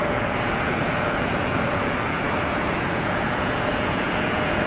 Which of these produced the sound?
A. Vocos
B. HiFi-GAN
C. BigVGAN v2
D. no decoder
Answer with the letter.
A